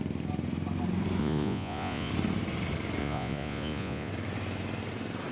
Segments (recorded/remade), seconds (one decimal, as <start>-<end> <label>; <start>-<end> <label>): 0.0-1.2 recorded; 1.2-2.1 remade; 2.1-3.0 recorded; 3.0-4.1 remade; 4.1-5.3 recorded